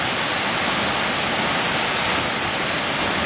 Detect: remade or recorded recorded